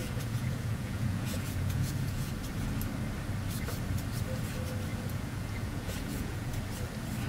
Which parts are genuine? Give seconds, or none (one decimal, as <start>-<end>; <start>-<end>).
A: 2.3-4.9; 6.5-7.3